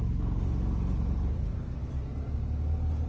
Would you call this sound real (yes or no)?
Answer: yes